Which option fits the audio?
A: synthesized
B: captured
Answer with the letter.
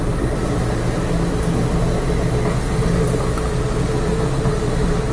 B